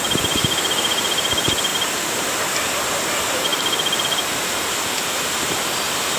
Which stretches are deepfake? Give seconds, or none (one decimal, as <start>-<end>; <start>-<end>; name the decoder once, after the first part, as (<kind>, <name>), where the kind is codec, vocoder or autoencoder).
0.0-6.2 (vocoder, BigVGAN v2)